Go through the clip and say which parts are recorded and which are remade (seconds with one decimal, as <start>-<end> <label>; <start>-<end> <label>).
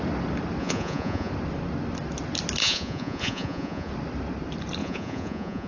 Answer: 0.0-0.6 recorded; 0.6-1.3 remade; 1.3-2.6 recorded; 2.6-3.9 remade; 3.9-4.8 recorded; 4.8-5.7 remade